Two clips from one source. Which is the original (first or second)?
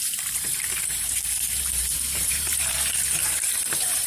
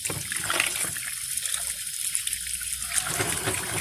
second